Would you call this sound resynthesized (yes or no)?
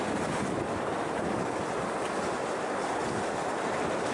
no